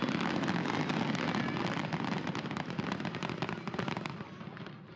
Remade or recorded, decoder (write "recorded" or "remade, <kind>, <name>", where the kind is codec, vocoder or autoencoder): recorded